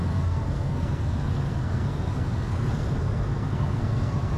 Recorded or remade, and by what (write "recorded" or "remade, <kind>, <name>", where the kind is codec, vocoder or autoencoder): remade, codec, SNAC